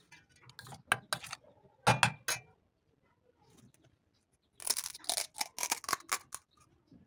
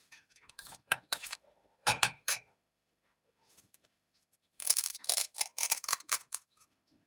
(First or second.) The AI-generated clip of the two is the second